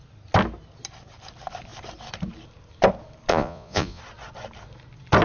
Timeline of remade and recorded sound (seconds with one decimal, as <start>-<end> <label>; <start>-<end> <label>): 0.0-3.3 recorded; 3.3-4.0 remade; 4.0-5.2 recorded